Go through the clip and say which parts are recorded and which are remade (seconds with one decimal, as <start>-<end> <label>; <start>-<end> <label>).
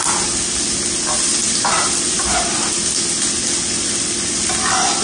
0.0-1.4 recorded; 1.4-2.7 remade; 2.7-5.0 recorded